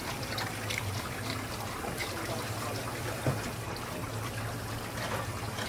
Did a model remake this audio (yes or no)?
no